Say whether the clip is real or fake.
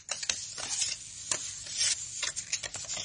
real